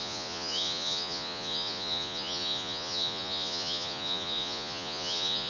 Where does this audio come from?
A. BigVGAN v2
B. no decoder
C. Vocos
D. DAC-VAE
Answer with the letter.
C